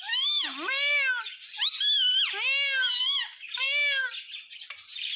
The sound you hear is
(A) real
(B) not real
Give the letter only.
A